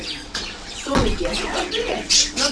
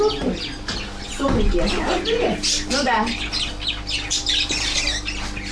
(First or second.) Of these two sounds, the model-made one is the first